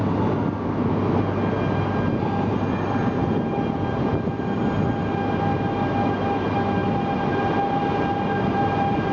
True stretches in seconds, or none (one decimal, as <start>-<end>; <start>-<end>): 0.0-9.1